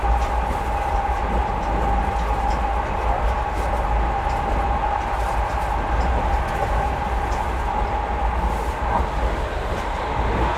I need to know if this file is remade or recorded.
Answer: recorded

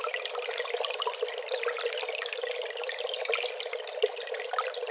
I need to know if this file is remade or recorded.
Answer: recorded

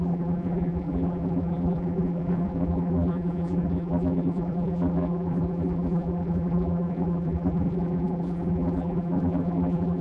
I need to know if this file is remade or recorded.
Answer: remade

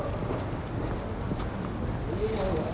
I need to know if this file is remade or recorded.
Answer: recorded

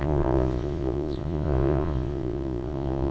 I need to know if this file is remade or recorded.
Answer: remade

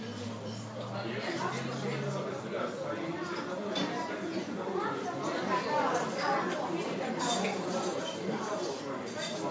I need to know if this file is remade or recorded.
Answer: recorded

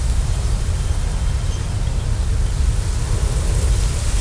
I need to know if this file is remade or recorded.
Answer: recorded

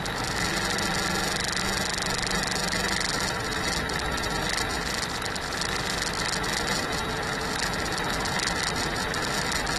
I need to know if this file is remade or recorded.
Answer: recorded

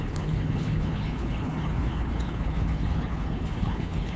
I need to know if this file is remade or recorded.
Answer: remade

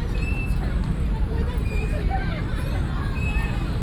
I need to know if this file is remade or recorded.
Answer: remade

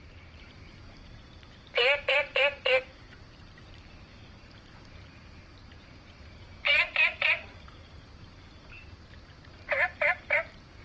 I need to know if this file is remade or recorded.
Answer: remade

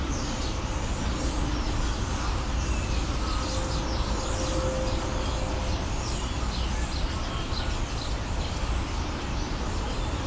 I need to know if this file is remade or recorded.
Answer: recorded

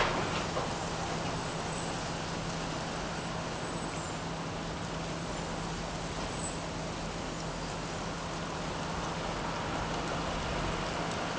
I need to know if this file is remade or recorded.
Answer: recorded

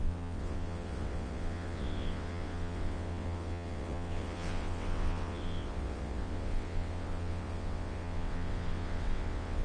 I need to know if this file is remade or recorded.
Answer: remade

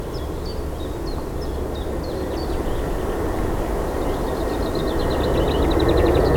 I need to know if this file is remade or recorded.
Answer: recorded